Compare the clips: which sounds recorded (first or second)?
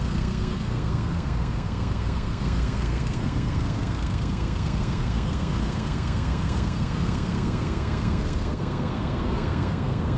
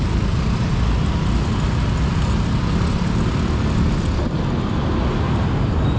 second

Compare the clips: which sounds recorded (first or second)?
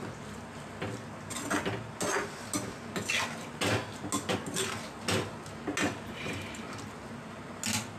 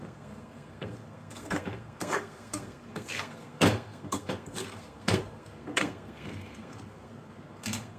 first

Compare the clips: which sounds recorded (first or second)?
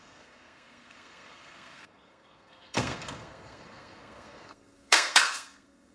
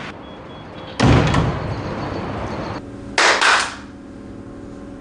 second